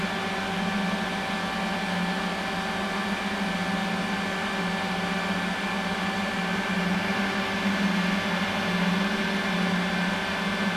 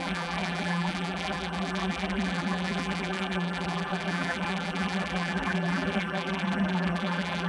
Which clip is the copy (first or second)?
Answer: second